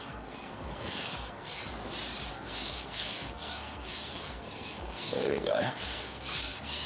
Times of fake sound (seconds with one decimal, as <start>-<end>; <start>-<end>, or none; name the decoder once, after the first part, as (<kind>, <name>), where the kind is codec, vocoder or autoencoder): 0.0-1.6 (codec, SNAC); 2.3-6.9